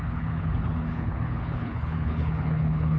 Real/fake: fake